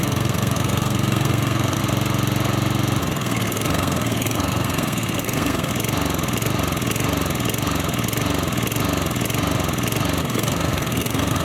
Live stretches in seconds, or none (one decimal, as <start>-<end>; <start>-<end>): 1.8-3.0; 5.7-10.2